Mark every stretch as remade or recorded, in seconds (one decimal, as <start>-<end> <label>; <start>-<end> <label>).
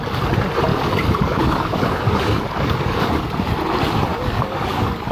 0.0-0.7 recorded; 0.7-3.1 remade; 3.1-4.1 recorded; 4.1-5.1 remade